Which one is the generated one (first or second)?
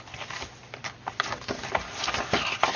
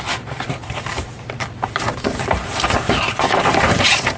second